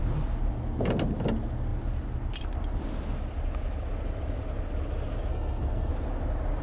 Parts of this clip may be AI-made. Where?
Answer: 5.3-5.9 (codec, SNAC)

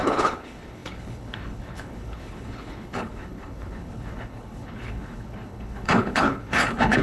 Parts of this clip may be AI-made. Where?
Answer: 0.0-7.0 (codec, HILCodec)

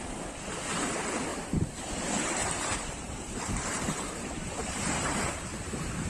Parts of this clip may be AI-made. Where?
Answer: 2.4-6.1 (vocoder, BigVGAN v2)

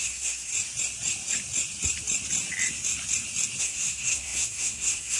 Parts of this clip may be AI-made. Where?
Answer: 0.0-0.5 (codec, SNAC); 3.6-5.2

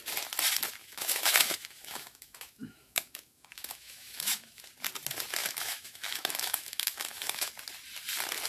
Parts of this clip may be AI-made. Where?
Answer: 0.8-4.6 (autoencoder, DAC-VAE); 5.4-7.5